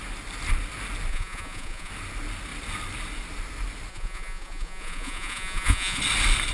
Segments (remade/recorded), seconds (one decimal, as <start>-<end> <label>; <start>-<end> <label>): 0.0-1.1 recorded; 1.1-1.9 remade; 1.9-3.9 recorded; 3.9-6.0 remade; 6.0-6.5 recorded